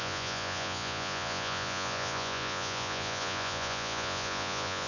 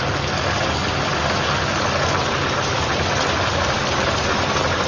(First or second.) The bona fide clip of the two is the second